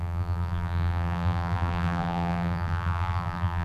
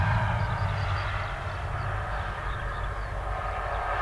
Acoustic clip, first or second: second